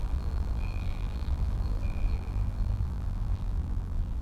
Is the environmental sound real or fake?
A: fake